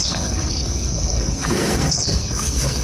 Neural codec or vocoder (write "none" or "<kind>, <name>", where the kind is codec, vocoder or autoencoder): codec, SNAC